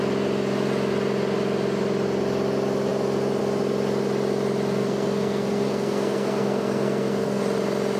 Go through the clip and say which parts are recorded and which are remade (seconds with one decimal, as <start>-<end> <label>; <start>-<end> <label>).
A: 0.0-4.8 recorded; 4.8-7.4 remade; 7.4-8.0 recorded